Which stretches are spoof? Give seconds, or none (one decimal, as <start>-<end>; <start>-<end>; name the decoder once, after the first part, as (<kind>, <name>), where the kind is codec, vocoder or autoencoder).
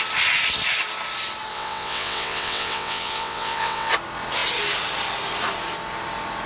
1.5-3.9 (vocoder, WaveNeXt)